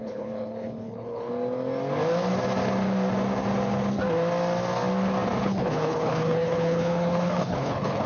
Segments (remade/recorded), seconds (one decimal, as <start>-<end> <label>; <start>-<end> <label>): 0.0-1.3 remade; 1.3-5.4 recorded; 5.4-8.1 remade